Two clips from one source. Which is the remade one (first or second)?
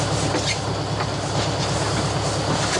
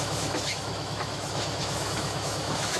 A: second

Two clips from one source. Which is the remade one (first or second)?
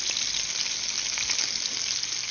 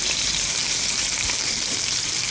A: second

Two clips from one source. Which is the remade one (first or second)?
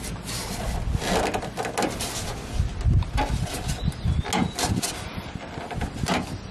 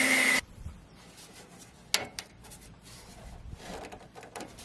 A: second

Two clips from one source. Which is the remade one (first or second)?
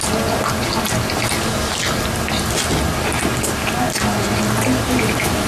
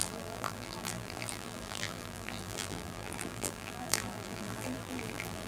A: second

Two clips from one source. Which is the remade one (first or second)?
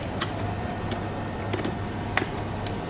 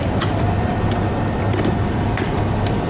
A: second